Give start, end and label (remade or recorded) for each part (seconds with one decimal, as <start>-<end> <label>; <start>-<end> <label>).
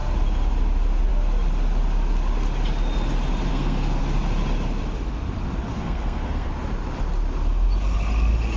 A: 0.0-3.5 recorded; 3.5-4.0 remade; 4.0-5.7 recorded; 5.7-6.5 remade; 6.5-8.6 recorded